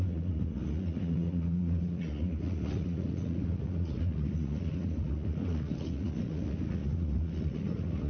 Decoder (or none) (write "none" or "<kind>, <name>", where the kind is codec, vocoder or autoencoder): vocoder, Vocos